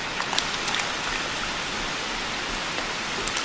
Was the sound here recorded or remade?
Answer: recorded